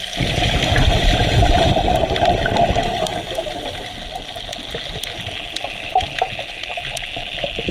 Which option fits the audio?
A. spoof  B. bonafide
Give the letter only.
B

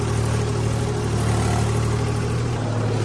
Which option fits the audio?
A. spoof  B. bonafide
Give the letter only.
B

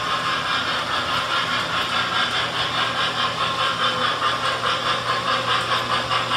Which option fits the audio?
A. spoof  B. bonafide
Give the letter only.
B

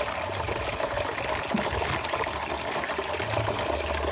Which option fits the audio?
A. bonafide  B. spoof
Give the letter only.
A